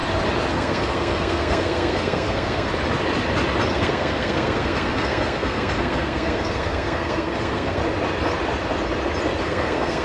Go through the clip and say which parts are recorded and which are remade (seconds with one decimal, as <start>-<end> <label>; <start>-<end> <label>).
0.0-0.5 recorded; 0.5-2.7 remade; 2.7-3.7 recorded; 3.7-7.8 remade; 7.8-9.4 recorded; 9.4-10.0 remade

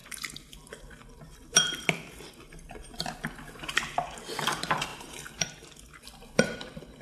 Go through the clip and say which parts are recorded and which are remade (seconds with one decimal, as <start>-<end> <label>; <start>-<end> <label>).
0.0-7.0 remade

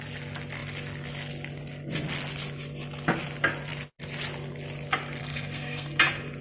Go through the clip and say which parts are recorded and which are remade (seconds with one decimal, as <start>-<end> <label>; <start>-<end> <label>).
0.0-5.2 recorded; 5.2-6.0 remade; 6.0-6.4 recorded

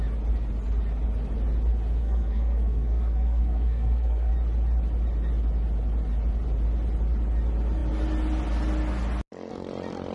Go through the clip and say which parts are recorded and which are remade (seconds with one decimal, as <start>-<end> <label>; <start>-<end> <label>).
0.0-2.0 recorded; 2.0-4.3 remade; 4.3-10.1 recorded

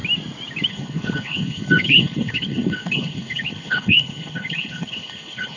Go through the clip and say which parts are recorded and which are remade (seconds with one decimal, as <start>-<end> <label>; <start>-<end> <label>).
0.0-0.7 recorded; 0.7-5.6 remade

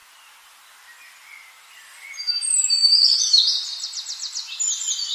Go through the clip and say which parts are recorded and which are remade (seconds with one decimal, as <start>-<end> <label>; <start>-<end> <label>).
0.0-5.1 recorded